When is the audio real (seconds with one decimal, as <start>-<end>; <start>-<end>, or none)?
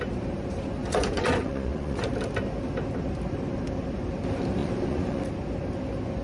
0.0-0.8; 2.1-4.6; 5.2-6.2